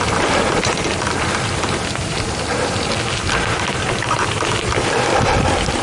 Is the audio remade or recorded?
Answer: remade